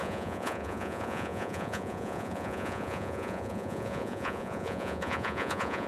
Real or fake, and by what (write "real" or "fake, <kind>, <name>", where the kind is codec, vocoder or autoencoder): fake, vocoder, Vocos